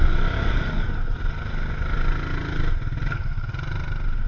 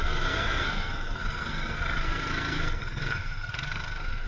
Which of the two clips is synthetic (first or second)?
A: second